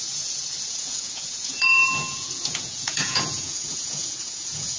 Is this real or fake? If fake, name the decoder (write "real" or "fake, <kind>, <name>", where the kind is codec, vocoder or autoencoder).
fake, vocoder, Vocos